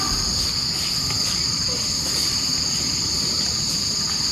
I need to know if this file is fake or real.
real